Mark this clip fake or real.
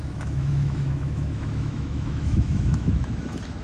fake